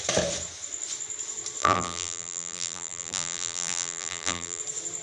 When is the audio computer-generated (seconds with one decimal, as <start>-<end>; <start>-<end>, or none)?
1.6-4.6